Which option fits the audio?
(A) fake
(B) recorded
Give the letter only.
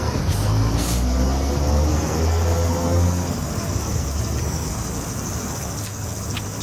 A